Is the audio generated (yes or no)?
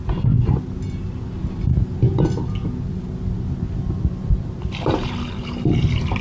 no